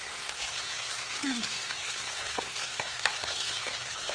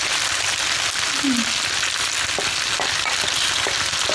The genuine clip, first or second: second